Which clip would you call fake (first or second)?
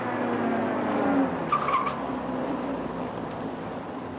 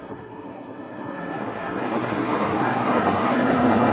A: second